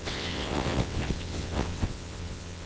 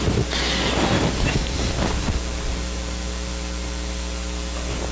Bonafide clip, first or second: second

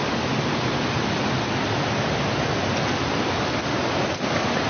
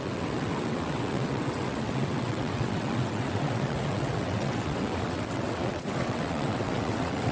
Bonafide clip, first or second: first